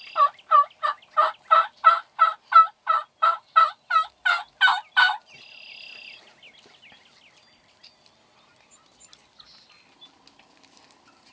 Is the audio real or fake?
real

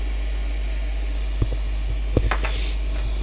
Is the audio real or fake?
real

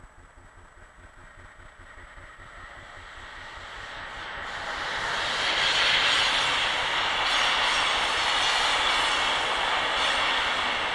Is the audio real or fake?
real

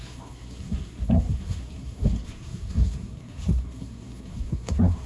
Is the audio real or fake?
fake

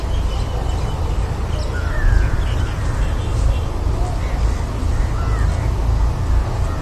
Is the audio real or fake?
real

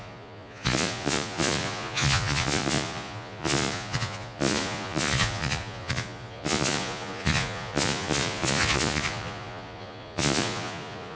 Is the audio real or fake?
fake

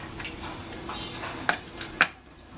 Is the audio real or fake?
fake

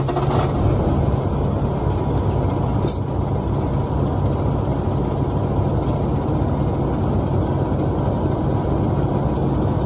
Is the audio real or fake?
real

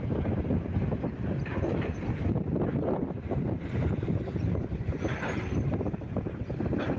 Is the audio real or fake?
real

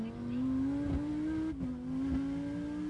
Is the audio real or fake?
real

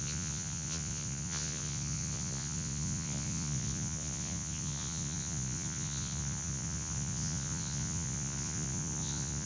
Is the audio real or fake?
fake